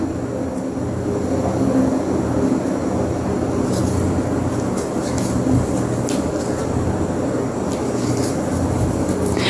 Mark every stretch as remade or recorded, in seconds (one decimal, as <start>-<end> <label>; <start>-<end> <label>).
0.0-9.5 recorded